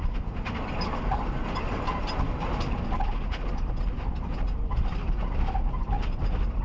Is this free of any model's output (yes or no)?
yes